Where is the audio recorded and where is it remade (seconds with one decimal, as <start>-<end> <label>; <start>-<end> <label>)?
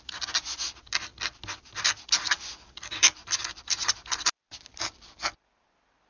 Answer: 0.0-6.1 recorded